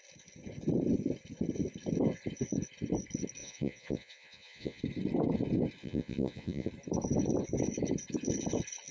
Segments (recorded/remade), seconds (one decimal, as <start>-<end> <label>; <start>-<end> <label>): 0.0-3.4 recorded; 3.4-4.8 remade; 4.8-5.8 recorded; 5.8-6.7 remade; 6.7-8.9 recorded